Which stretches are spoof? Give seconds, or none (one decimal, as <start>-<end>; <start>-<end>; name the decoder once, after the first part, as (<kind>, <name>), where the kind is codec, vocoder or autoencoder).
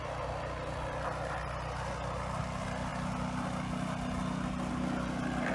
none